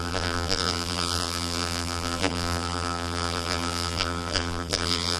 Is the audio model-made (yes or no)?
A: yes